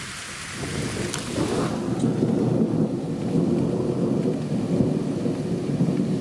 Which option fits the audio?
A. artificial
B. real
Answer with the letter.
B